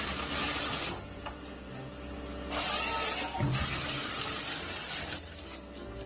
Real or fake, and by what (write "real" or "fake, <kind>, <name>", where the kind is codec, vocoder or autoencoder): real